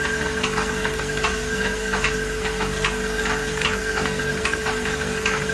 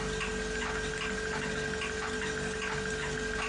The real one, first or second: second